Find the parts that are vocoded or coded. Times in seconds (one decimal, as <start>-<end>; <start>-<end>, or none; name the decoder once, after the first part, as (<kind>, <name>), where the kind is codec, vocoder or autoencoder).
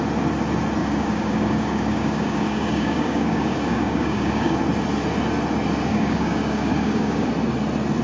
0.8-4.6 (codec, DAC); 5.9-7.3